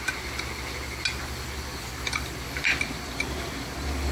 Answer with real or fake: real